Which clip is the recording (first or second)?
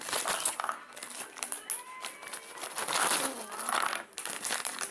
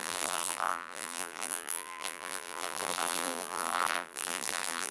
first